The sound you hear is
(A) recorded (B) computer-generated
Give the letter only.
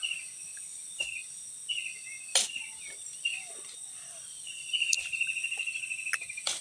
A